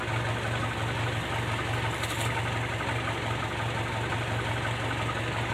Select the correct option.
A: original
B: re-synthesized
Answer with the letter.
A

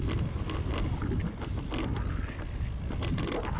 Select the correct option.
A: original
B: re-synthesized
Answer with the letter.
A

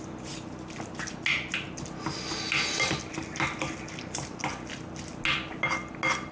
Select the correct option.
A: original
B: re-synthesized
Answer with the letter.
A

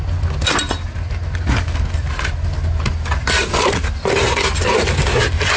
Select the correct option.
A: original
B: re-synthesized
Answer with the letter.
A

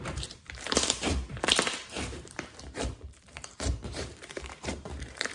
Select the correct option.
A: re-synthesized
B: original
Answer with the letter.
A